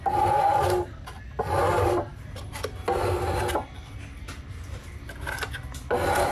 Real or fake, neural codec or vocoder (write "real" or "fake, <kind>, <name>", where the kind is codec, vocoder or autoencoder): real